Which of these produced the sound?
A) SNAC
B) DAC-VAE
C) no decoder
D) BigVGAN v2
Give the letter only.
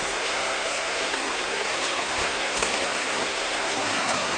A